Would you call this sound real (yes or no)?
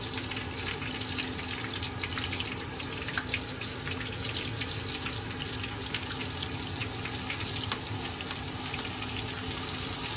yes